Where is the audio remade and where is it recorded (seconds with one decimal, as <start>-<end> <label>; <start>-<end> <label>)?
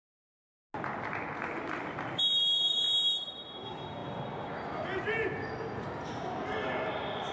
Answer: 0.0-7.3 recorded